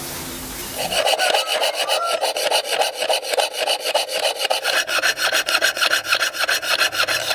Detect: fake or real real